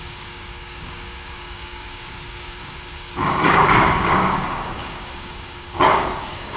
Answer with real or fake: fake